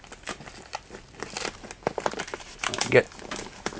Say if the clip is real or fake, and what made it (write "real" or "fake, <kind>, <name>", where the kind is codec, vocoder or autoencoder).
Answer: real